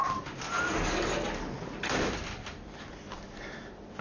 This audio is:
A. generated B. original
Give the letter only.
B